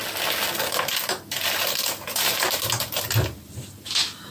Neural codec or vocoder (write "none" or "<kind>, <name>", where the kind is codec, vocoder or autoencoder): none